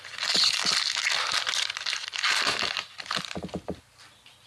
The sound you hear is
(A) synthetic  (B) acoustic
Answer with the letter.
B